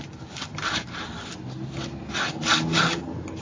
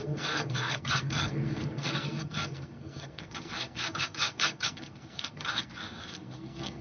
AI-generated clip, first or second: second